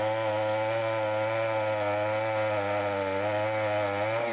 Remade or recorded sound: recorded